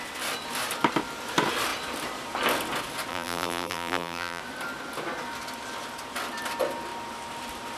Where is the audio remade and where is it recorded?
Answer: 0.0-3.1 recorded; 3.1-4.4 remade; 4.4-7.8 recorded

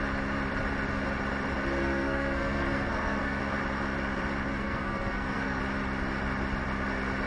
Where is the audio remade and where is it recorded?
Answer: 0.0-1.8 recorded; 1.8-3.4 remade; 3.4-4.5 recorded; 4.5-5.6 remade; 5.6-7.3 recorded

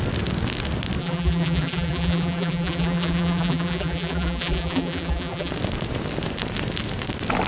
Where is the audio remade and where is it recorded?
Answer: 0.0-1.0 recorded; 1.0-5.5 remade; 5.5-7.5 recorded

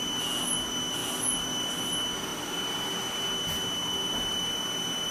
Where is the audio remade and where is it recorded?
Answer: 0.0-1.0 recorded; 1.0-1.8 remade; 1.8-5.1 recorded

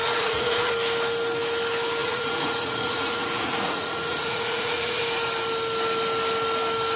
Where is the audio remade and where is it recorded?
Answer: 0.0-0.7 remade; 0.7-2.0 recorded; 2.0-5.0 remade; 5.0-7.0 recorded

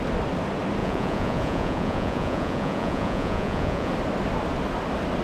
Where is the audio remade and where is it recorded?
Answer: 0.0-0.8 recorded; 0.8-3.9 remade; 3.9-5.2 recorded